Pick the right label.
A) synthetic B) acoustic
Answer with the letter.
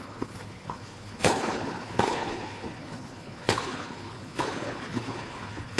A